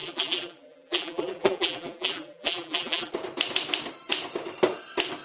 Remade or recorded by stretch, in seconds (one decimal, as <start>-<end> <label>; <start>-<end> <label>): 0.0-3.1 remade; 3.1-5.2 recorded